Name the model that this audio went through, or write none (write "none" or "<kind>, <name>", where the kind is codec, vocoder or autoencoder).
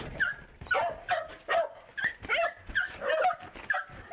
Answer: none